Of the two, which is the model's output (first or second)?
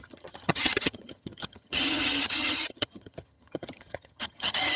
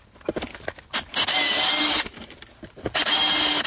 first